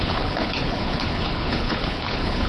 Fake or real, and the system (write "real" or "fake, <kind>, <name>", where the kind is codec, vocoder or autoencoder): fake, codec, HILCodec